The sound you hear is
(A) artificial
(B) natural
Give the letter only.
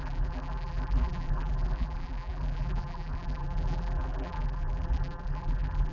A